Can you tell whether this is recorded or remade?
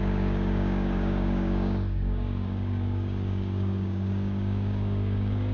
remade